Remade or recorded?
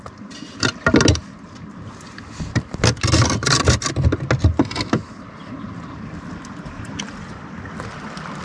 recorded